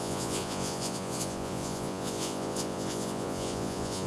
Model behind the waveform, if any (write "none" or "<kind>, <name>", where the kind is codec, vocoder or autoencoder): vocoder, Vocos